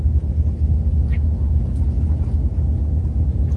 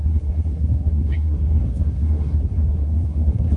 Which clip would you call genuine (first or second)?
first